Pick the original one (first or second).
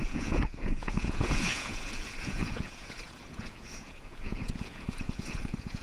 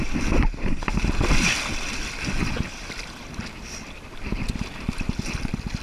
second